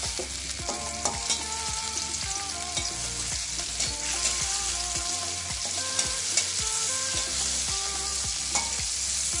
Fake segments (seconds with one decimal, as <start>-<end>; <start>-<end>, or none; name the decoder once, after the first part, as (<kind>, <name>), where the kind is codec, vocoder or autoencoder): none